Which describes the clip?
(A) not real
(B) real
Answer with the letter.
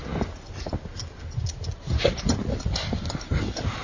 B